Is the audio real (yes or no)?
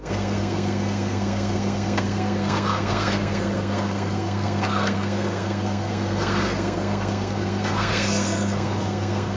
no